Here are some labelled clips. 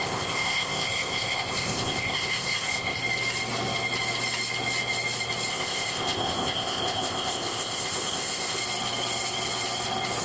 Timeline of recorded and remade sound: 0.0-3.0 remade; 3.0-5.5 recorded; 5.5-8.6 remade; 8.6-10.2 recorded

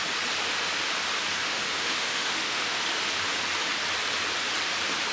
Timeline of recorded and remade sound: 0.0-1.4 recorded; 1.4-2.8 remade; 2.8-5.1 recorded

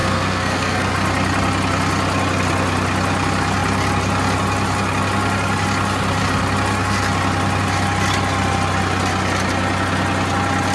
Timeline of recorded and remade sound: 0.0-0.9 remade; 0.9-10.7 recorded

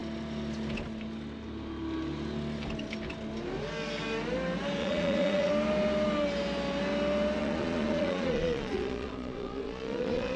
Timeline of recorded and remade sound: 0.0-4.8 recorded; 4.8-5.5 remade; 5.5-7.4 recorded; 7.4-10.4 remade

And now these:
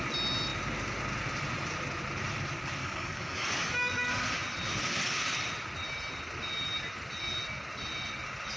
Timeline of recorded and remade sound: 0.0-2.8 recorded; 2.8-4.0 remade; 4.0-8.6 recorded

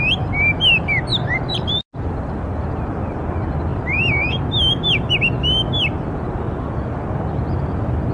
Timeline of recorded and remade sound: 0.0-1.1 recorded; 1.1-1.8 remade; 1.8-3.7 recorded; 3.7-4.4 remade; 4.4-8.1 recorded

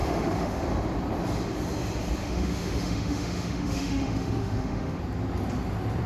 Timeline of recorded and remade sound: 0.0-0.6 remade; 0.6-2.2 recorded; 2.2-5.0 remade; 5.0-6.1 recorded